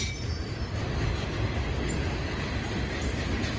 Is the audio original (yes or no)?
yes